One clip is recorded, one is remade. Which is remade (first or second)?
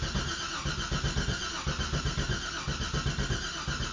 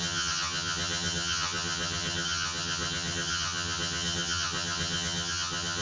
second